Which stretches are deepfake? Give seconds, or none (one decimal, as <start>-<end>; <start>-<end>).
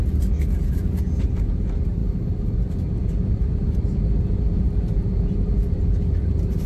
1.2-6.7